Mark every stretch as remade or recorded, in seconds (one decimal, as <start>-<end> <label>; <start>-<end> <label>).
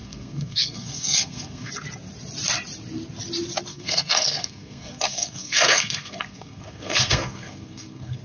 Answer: 0.0-1.7 remade; 1.7-3.7 recorded; 3.7-8.2 remade